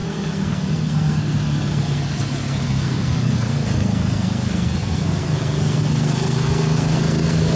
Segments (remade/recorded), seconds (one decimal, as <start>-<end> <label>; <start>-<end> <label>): 0.0-7.6 remade